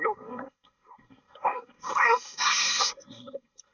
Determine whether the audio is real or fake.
fake